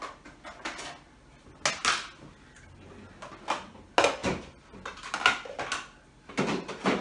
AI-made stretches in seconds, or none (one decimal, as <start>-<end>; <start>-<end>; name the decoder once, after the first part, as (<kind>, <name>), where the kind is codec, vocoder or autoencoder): none